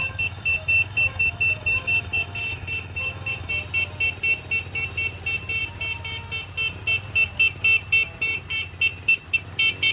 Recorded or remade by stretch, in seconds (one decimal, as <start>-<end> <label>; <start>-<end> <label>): 0.0-3.5 remade; 3.5-9.9 recorded